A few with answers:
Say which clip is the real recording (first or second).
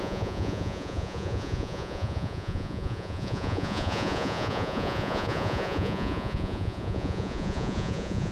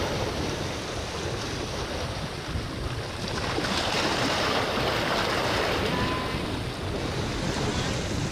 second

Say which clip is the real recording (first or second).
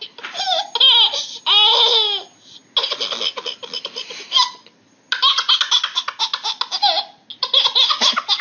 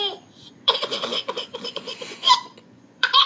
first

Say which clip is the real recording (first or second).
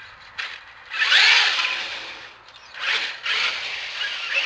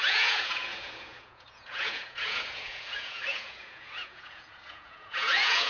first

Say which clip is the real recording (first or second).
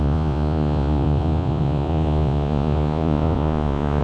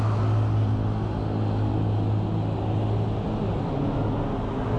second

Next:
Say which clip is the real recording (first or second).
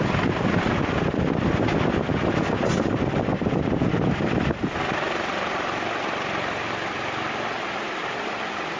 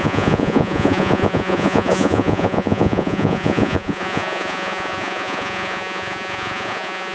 first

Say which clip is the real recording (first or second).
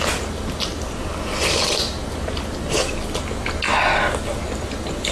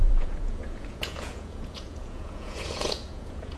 first